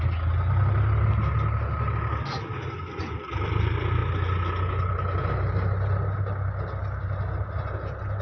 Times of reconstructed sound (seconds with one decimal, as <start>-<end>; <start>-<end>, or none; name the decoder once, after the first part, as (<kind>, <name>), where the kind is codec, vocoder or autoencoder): none